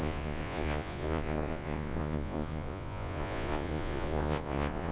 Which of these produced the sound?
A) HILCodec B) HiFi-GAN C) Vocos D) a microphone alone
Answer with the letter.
C